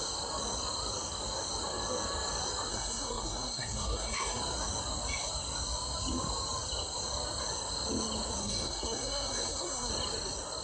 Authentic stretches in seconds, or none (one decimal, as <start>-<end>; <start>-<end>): 0.0-2.7; 4.4-8.4; 9.9-10.6